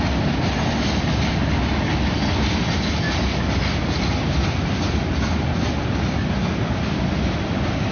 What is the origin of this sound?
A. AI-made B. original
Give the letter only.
B